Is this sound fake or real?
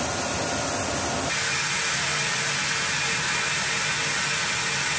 real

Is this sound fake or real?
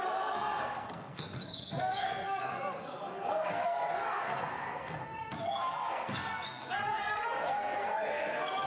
fake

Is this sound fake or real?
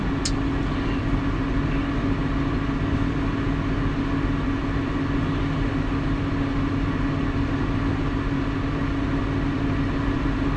real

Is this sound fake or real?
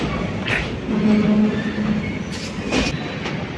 real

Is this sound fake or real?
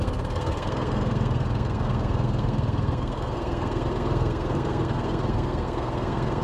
fake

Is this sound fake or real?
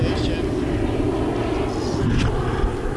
real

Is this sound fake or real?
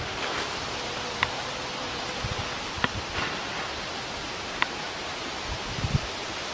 real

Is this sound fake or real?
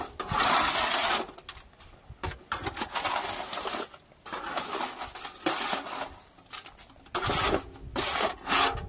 real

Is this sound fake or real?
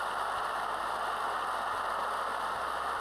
real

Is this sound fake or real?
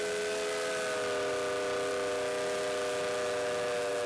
real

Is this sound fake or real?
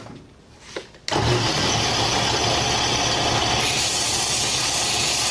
real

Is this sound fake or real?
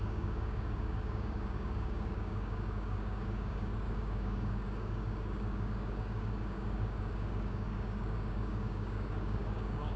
fake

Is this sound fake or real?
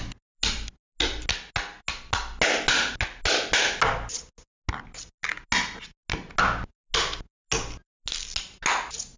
real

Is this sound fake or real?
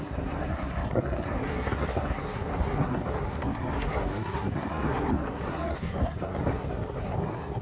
fake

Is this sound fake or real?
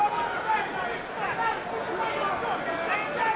real